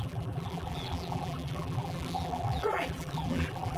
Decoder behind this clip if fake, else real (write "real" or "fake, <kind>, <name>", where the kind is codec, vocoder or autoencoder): fake, vocoder, BigVGAN v2